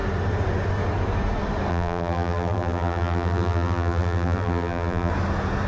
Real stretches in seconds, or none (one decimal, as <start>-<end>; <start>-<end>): 0.0-1.7; 5.1-5.7